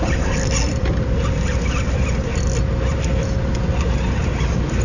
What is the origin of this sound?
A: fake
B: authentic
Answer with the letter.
B